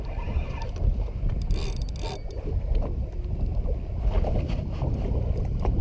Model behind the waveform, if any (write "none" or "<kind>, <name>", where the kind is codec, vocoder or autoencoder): none